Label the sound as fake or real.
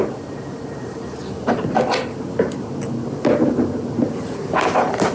real